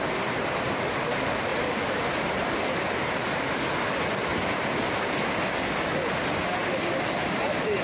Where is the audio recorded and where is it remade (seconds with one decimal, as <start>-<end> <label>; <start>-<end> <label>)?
0.0-7.8 recorded